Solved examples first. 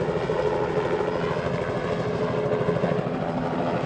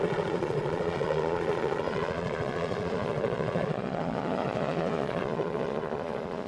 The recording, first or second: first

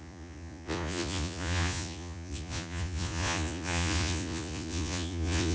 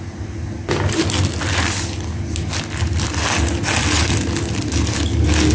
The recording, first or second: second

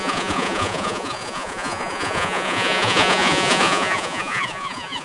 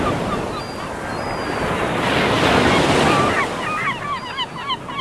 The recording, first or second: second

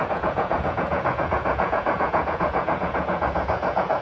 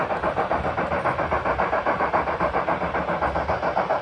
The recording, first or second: second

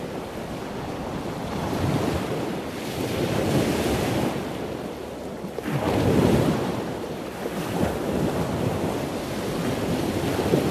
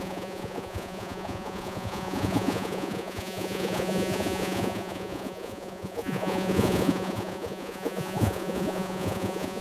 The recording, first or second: first